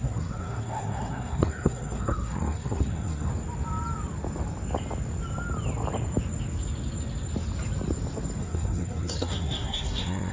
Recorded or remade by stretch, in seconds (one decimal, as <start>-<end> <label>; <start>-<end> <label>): 0.0-3.3 remade; 3.3-8.4 recorded; 8.4-10.3 remade

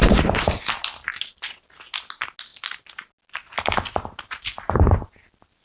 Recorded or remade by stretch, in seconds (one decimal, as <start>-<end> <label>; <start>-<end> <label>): 0.0-5.6 recorded

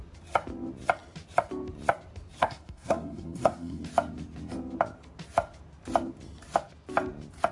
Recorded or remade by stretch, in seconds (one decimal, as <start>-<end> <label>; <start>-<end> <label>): 0.0-2.4 recorded; 2.4-3.8 remade; 3.8-7.5 recorded

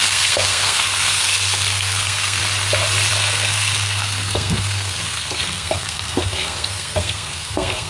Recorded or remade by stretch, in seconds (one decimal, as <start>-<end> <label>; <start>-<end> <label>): 0.0-2.4 remade; 2.4-3.1 recorded; 3.1-7.9 remade

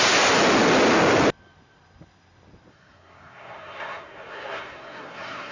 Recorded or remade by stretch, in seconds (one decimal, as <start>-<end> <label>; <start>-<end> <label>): 0.0-2.7 recorded; 2.7-5.5 remade

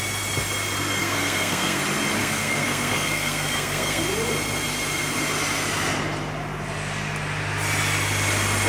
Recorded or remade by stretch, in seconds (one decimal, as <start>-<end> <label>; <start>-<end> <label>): 0.0-1.0 recorded; 1.0-1.8 remade; 1.8-2.2 recorded; 2.2-4.0 remade; 4.0-8.7 recorded